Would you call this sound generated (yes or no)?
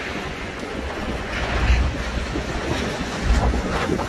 yes